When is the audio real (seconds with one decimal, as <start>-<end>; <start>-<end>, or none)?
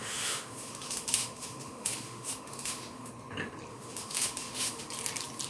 3.1-3.7; 4.9-5.5